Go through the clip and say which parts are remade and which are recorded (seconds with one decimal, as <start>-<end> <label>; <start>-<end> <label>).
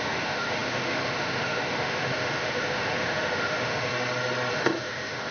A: 0.0-3.9 remade; 3.9-4.5 recorded; 4.5-5.3 remade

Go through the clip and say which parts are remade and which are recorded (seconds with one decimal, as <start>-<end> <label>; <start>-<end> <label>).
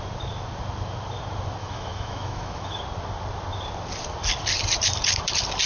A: 0.0-1.6 recorded; 1.6-2.8 remade; 2.8-5.7 recorded